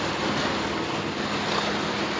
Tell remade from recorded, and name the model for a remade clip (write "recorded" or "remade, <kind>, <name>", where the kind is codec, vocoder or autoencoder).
recorded